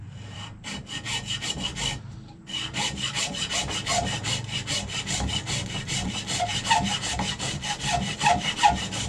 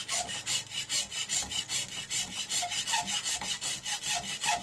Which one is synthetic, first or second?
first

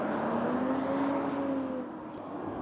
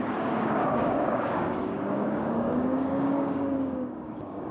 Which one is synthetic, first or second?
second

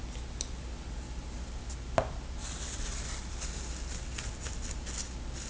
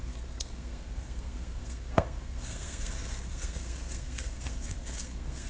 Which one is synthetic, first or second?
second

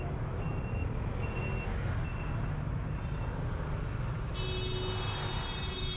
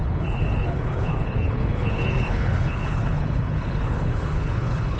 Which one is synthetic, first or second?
second